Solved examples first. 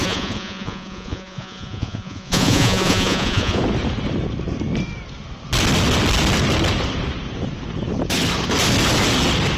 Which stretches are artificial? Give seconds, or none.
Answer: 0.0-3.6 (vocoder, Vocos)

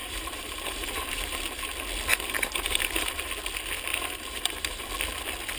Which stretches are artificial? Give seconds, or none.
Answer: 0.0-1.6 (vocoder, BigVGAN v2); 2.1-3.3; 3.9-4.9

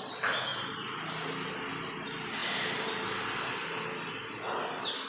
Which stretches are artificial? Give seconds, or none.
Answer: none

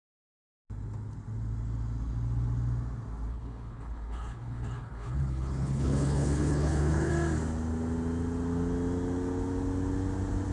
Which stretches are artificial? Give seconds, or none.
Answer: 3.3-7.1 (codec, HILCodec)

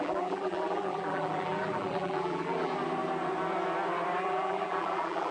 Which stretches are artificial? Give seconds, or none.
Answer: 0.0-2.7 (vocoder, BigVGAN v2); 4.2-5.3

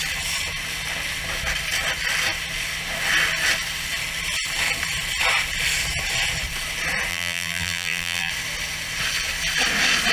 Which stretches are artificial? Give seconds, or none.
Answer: 7.1-8.3 (vocoder, BigVGAN v2)

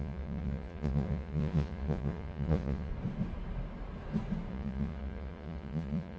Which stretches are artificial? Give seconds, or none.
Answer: 0.0-2.9 (vocoder, Vocos); 4.5-6.2

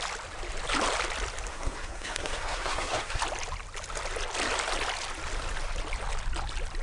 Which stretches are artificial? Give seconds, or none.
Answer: 1.5-3.2 (codec, SNAC)